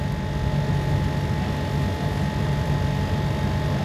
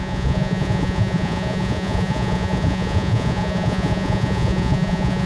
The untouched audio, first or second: first